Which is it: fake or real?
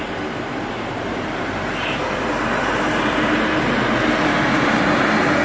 fake